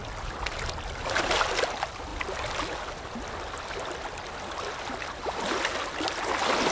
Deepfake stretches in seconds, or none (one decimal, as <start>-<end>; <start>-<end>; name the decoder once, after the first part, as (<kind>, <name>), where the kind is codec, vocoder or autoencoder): none